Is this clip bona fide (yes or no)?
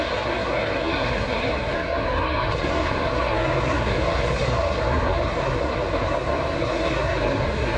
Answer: no